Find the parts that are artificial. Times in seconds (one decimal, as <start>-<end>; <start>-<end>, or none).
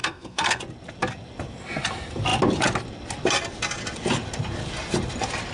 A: 0.0-0.6